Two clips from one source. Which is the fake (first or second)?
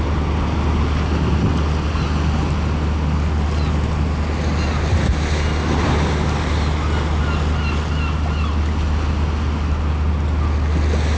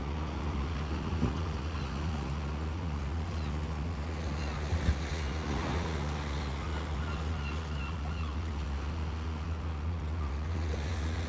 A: second